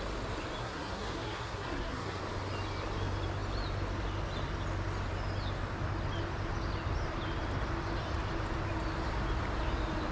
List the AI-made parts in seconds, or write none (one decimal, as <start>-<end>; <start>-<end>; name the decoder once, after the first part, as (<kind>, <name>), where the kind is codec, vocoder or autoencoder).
0.6-2.2 (codec, SNAC)